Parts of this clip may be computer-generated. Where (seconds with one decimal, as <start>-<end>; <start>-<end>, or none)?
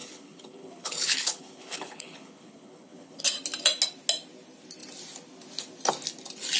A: 0.0-3.2